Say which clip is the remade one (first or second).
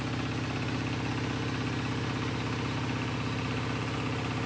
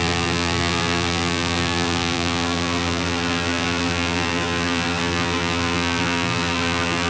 second